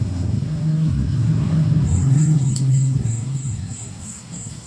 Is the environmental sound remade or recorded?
remade